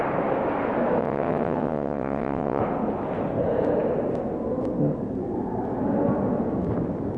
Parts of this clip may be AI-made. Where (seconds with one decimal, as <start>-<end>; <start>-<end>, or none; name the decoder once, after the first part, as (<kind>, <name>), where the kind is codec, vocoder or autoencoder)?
1.0-2.6 (vocoder, WaveNeXt)